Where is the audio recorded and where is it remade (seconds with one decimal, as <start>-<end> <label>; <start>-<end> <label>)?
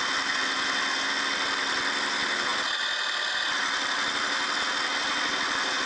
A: 0.0-5.9 recorded